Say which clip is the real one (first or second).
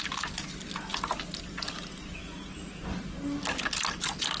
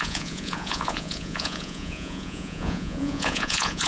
first